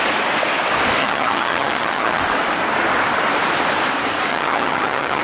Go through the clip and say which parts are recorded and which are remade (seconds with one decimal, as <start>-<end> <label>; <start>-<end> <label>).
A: 0.0-1.0 recorded; 1.0-2.2 remade; 2.2-4.3 recorded; 4.3-5.2 remade